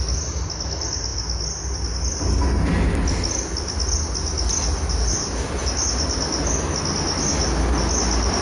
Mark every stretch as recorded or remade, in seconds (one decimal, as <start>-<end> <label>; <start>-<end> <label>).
0.0-8.4 recorded